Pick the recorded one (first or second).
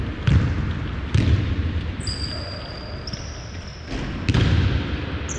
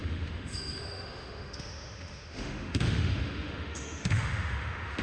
first